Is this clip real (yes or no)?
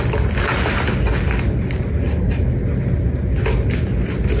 yes